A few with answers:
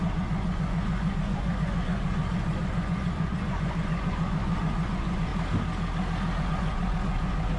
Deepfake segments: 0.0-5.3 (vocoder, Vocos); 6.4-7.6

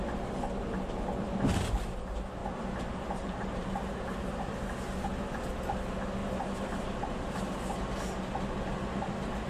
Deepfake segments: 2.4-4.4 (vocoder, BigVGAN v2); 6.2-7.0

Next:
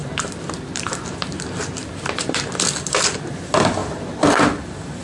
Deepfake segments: 0.0-1.2 (vocoder, BigVGAN v2); 1.8-2.5